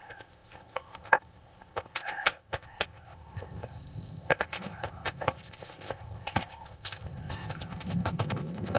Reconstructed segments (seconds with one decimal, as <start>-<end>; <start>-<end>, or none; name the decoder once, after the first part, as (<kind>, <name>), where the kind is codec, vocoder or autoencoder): 0.0-8.8 (codec, ZipCodec)